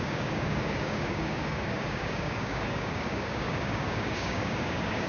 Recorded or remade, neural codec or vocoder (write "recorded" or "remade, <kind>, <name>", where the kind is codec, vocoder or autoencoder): remade, codec, DAC